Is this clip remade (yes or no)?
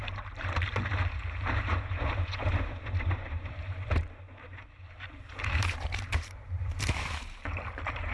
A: yes